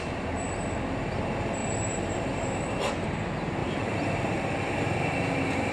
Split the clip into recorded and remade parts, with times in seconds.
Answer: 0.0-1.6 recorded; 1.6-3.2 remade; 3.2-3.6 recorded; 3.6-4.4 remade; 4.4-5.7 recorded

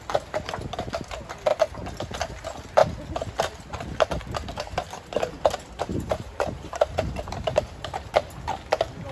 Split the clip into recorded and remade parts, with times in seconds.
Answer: 0.0-5.9 recorded; 5.9-8.3 remade; 8.3-9.1 recorded

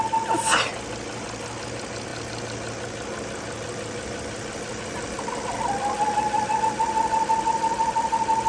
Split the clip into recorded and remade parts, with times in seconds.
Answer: 0.0-8.5 recorded

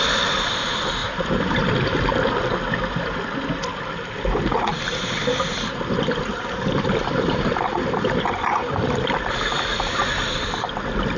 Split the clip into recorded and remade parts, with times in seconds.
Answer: 0.0-2.1 remade; 2.1-6.6 recorded; 6.6-11.2 remade

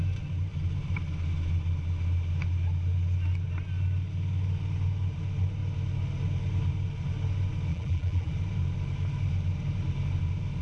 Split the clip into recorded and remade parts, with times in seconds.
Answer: 0.0-7.7 recorded; 7.7-8.3 remade; 8.3-10.6 recorded